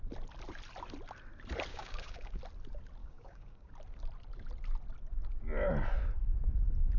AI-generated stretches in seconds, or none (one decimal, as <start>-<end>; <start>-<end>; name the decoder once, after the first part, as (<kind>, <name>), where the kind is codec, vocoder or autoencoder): 1.7-2.4 (codec, DAC); 3.0-3.7